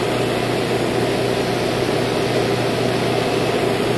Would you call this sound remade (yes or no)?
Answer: no